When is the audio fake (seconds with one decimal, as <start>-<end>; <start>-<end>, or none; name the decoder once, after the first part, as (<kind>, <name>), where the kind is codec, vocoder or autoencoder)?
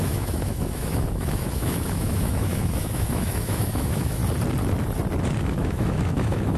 0.0-4.2 (autoencoder, DAC-VAE); 5.4-6.6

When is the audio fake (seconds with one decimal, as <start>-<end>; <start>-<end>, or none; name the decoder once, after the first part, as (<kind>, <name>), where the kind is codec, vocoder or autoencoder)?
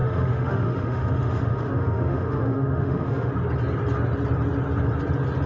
0.0-3.3 (autoencoder, DAC-VAE)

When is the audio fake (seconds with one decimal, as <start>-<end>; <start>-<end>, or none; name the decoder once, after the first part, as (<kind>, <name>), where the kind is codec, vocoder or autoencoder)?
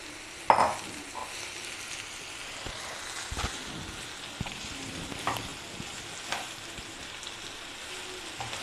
none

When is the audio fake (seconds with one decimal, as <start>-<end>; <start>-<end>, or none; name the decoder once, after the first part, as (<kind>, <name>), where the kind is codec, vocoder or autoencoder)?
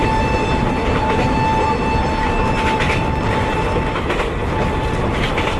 none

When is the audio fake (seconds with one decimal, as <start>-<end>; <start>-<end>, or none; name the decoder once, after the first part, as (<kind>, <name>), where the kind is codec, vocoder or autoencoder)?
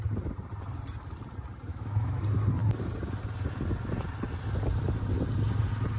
1.7-2.2 (autoencoder, DAC-VAE)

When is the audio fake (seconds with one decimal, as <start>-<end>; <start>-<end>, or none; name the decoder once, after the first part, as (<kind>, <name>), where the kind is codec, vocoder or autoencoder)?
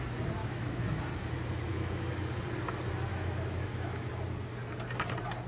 0.4-1.0 (autoencoder, DAC-VAE); 1.7-2.3; 3.1-4.1